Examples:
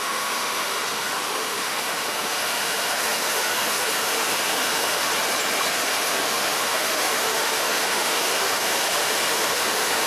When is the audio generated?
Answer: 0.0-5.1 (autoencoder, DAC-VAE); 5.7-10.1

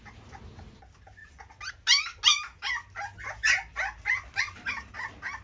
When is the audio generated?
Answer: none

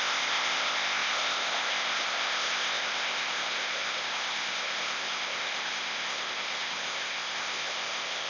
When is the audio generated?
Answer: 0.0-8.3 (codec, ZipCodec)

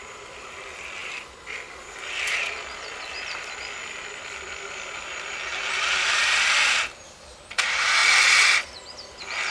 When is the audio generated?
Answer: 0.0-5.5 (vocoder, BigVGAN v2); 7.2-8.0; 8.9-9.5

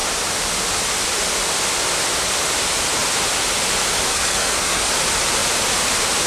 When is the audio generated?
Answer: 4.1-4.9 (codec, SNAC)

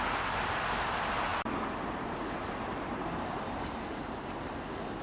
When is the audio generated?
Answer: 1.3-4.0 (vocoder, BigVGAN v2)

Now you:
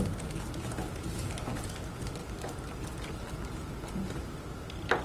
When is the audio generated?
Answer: none